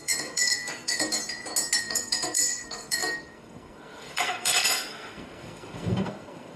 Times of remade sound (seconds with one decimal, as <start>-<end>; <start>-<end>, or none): 0.0-1.2; 1.8-6.6